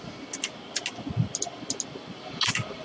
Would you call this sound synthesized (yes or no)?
no